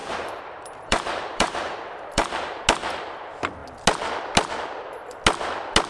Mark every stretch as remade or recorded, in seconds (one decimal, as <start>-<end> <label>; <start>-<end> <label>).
0.0-2.6 remade; 2.6-5.9 recorded